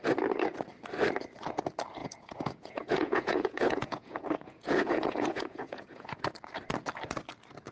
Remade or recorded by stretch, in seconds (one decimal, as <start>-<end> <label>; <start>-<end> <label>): 0.0-2.0 recorded; 2.0-6.3 remade; 6.3-7.7 recorded